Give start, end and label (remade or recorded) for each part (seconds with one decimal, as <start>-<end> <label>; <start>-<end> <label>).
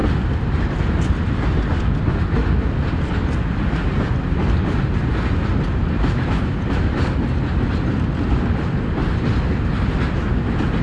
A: 0.0-4.4 recorded; 4.4-7.2 remade; 7.2-9.0 recorded; 9.0-10.8 remade